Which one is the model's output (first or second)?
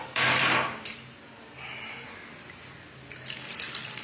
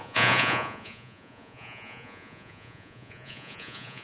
second